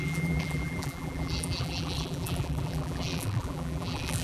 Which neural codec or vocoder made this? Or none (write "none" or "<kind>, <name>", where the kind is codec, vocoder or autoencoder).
vocoder, BigVGAN v2